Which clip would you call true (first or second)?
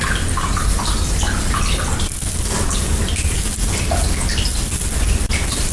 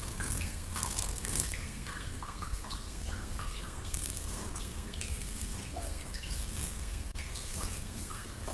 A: first